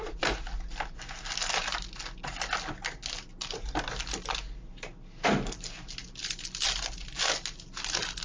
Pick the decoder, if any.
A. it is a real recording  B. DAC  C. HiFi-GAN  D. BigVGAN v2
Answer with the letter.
A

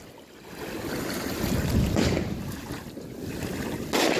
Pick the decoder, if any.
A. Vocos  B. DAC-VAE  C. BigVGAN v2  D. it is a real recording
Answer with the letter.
D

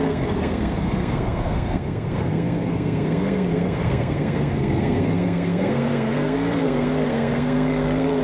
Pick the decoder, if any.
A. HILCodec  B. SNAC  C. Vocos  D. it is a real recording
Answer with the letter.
B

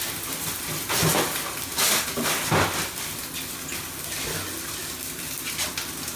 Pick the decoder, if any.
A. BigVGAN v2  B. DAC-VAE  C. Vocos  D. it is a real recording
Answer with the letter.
D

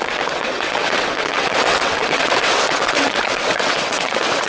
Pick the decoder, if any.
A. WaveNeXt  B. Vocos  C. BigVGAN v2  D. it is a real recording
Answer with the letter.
A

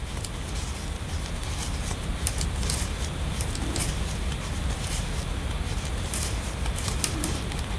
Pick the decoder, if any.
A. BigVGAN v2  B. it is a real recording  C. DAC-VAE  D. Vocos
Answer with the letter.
B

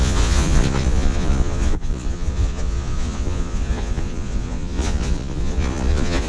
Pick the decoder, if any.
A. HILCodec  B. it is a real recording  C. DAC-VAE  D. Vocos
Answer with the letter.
D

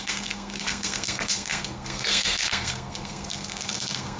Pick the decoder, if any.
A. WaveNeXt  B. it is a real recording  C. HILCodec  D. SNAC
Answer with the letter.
D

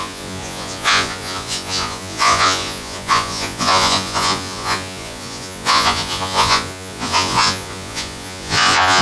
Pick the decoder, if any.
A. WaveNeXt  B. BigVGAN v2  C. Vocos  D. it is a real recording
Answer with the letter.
C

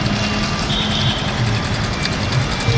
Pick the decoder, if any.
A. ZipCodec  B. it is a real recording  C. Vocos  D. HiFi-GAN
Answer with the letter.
B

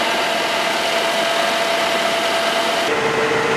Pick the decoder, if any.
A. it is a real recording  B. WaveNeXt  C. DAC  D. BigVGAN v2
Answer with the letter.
A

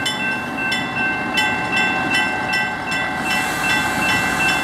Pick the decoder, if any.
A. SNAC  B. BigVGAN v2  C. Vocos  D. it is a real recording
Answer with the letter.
D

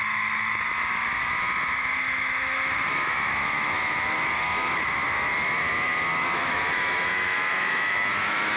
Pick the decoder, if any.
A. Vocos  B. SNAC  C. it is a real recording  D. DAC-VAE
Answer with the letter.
D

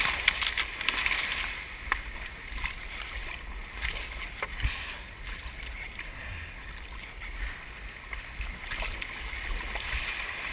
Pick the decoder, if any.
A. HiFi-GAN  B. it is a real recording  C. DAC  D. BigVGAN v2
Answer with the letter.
B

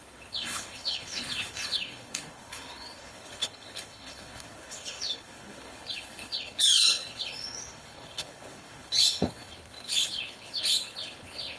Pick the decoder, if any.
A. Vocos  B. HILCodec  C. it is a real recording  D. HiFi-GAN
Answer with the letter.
B